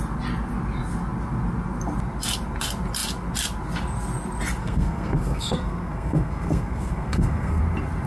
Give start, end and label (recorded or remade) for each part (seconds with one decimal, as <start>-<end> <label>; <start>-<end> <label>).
0.0-4.6 recorded; 4.6-7.6 remade; 7.6-8.1 recorded